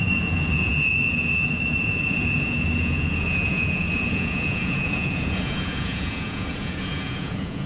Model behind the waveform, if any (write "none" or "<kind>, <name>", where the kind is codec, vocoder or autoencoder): vocoder, Vocos